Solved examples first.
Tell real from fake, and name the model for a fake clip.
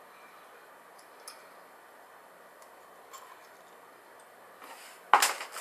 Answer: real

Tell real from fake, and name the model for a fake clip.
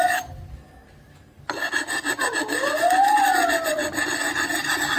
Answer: real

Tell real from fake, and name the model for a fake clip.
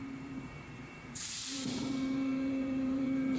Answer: fake, vocoder, BigVGAN v2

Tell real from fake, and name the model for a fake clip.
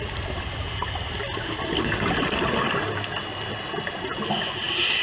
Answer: real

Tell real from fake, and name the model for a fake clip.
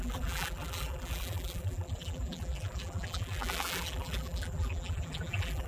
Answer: fake, vocoder, BigVGAN v2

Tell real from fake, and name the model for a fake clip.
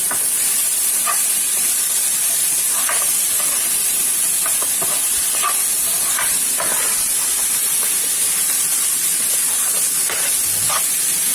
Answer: real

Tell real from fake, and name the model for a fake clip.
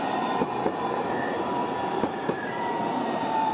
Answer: fake, vocoder, BigVGAN v2